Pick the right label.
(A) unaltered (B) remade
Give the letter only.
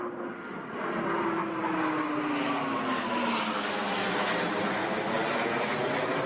A